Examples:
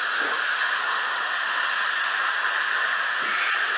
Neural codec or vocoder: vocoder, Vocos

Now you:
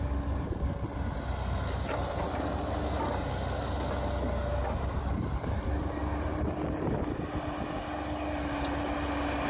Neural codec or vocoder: none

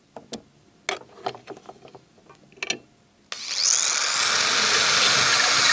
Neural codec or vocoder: none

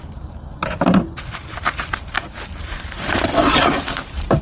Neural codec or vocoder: vocoder, BigVGAN v2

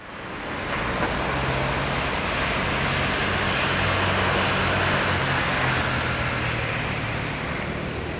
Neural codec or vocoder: none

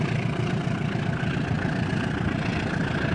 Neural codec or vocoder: none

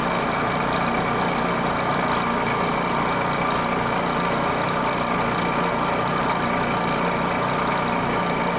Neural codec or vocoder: none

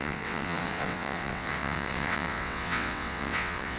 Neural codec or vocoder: vocoder, WaveNeXt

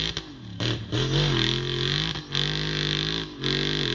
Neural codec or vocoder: none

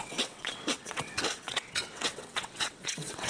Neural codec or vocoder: vocoder, WaveNeXt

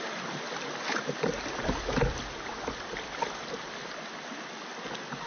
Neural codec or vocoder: vocoder, BigVGAN v2